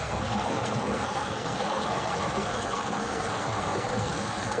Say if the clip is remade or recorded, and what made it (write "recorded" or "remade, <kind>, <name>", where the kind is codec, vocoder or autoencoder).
remade, codec, SNAC